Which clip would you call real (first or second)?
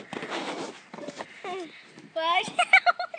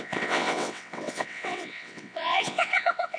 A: first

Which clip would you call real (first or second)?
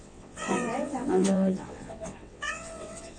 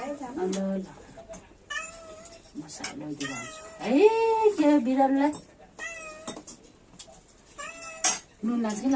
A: second